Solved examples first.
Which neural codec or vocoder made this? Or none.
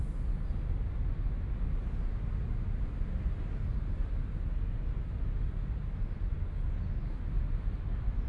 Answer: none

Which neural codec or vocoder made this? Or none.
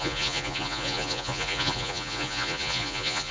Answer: vocoder, Vocos